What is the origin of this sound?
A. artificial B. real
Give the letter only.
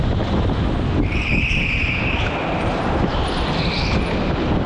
B